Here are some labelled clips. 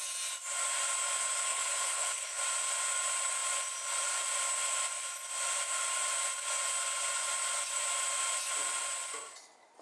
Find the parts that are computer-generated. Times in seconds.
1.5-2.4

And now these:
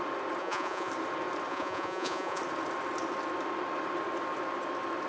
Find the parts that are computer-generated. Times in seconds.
0.4-0.9; 1.5-2.4

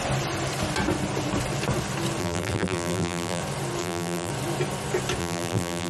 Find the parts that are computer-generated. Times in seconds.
2.2-3.4; 3.8-4.3; 5.2-5.9

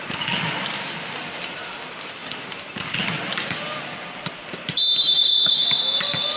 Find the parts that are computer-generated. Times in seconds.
none

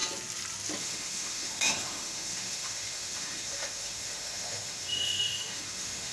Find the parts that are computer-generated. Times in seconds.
0.8-6.1

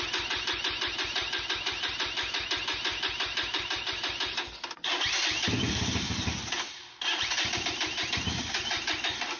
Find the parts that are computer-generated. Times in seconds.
none

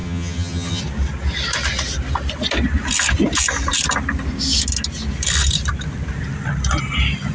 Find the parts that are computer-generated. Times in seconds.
0.0-0.8

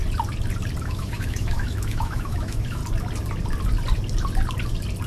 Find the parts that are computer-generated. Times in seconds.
0.8-2.8